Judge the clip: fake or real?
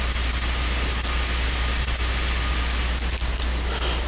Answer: real